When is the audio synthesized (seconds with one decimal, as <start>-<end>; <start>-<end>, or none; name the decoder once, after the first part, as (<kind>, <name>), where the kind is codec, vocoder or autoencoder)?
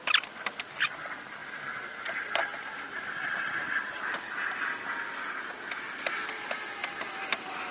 none